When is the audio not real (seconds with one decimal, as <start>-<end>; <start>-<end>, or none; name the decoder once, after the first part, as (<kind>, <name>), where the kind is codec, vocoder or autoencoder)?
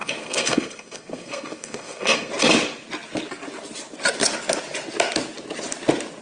0.0-2.3 (codec, SNAC)